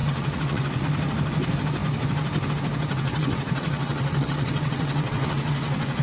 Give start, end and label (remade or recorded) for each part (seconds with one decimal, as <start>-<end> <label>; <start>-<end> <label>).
0.0-0.8 remade; 0.8-2.9 recorded; 2.9-6.0 remade